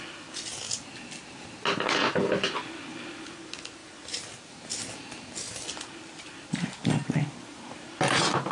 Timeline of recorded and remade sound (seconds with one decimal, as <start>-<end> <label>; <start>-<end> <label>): 0.0-8.5 recorded